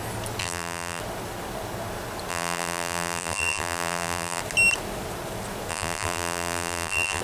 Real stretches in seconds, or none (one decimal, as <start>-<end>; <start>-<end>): 0.0-0.4; 1.0-2.3; 4.4-5.7